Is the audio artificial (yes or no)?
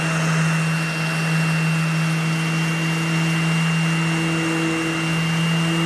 no